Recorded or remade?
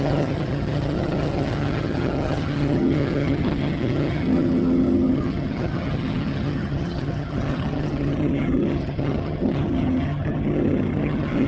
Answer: remade